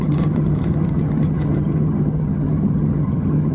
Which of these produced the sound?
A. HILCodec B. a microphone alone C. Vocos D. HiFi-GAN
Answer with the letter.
D